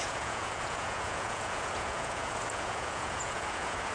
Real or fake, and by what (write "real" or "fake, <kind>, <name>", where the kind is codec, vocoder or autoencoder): fake, vocoder, Vocos